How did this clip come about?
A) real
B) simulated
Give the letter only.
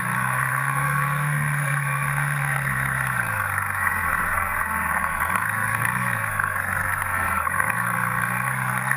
B